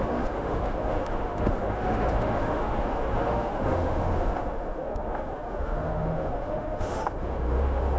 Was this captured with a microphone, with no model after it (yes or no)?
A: no